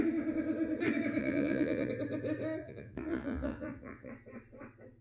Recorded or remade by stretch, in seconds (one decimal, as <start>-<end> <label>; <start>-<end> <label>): 0.0-1.2 recorded; 1.2-1.9 remade; 1.9-2.6 recorded; 2.6-4.1 remade; 4.1-5.0 recorded